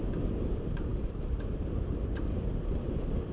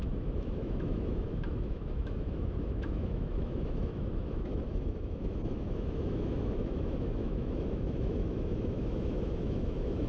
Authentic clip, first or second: first